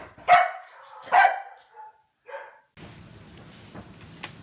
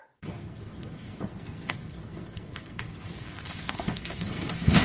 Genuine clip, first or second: first